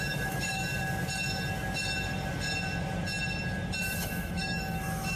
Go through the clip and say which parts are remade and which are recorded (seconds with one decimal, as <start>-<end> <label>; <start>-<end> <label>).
0.0-0.7 remade; 0.7-3.8 recorded; 3.8-5.2 remade